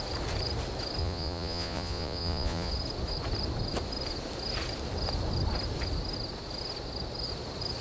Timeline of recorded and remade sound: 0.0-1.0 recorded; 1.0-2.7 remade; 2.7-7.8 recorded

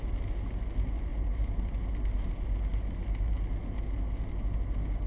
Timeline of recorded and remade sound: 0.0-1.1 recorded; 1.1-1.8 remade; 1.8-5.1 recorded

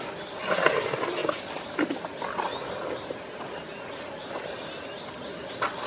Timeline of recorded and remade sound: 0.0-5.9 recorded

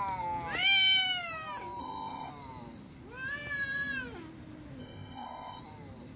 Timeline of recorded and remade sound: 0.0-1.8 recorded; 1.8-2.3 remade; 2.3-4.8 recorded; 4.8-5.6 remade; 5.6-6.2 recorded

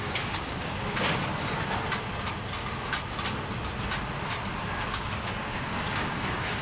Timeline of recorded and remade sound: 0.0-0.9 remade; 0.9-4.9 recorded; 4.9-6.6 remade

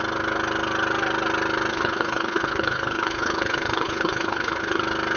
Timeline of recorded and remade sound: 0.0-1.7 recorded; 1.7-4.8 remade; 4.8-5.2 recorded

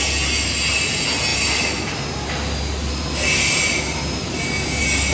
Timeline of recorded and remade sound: 0.0-5.1 recorded